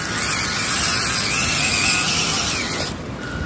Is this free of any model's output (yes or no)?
yes